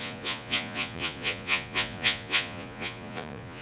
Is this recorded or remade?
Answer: remade